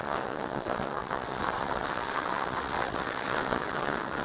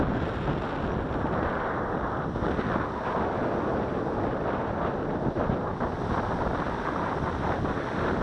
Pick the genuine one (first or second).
second